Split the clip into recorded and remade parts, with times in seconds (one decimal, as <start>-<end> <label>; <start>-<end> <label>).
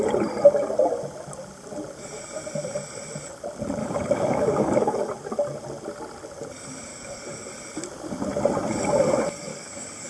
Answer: 0.0-3.8 recorded; 3.8-5.1 remade; 5.1-6.9 recorded; 6.9-7.5 remade; 7.5-9.5 recorded; 9.5-10.1 remade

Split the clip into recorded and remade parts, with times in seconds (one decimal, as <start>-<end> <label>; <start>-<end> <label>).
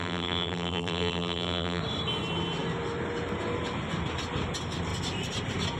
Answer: 0.0-1.8 remade; 1.8-5.8 recorded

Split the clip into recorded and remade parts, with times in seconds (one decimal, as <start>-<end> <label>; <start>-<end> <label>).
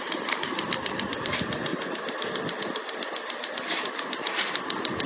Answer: 0.0-5.1 recorded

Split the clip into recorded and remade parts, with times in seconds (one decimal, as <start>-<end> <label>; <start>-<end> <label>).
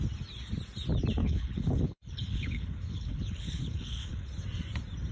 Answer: 0.0-1.2 recorded; 1.2-4.3 remade; 4.3-5.1 recorded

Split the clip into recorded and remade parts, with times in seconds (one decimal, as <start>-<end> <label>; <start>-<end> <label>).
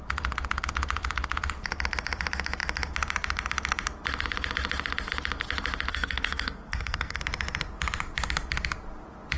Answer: 0.0-5.9 recorded; 5.9-7.2 remade; 7.2-9.4 recorded